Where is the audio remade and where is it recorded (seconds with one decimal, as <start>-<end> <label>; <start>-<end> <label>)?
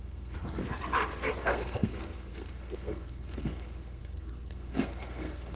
0.0-0.6 remade; 0.6-1.4 recorded; 1.4-5.6 remade